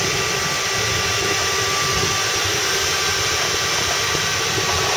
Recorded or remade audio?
recorded